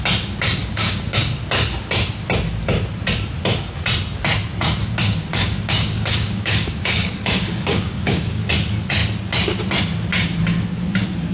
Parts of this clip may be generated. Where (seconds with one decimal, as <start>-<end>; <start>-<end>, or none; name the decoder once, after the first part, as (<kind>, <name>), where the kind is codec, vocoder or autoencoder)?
0.6-1.3 (codec, DAC); 4.8-8.5